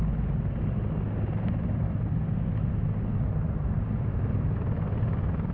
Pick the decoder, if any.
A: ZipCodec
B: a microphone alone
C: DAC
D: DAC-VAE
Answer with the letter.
B